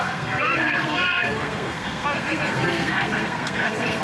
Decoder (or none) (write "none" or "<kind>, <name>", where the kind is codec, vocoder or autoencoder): codec, SNAC